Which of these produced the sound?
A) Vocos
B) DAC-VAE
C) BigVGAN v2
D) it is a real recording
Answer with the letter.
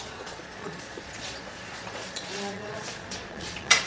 A